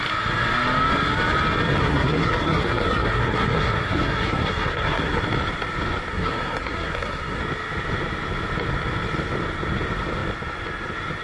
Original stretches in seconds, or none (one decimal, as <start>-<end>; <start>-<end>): 0.0-1.8; 5.2-6.1; 7.4-11.2